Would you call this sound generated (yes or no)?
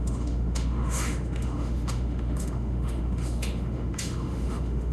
yes